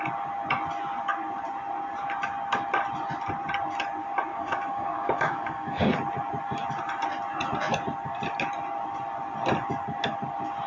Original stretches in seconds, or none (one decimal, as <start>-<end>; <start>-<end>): 0.0-4.3; 5.9-10.7